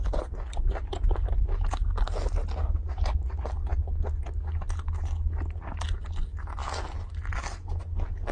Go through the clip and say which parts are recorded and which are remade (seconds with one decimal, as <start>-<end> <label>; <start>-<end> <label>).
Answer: 0.0-8.3 recorded